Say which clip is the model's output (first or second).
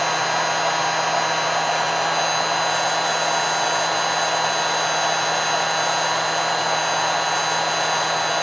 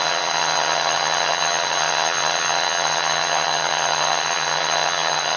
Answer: second